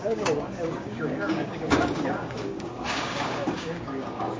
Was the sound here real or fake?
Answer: fake